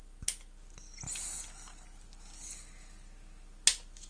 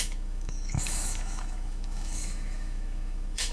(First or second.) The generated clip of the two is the second